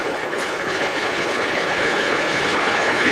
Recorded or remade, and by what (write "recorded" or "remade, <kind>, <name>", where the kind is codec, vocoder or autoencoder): remade, codec, HILCodec